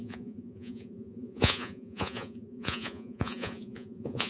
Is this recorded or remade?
remade